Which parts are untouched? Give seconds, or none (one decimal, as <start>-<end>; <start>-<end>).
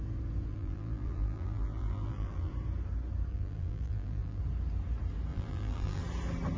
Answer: 0.0-0.5; 2.5-3.3; 4.4-5.3; 6.0-6.6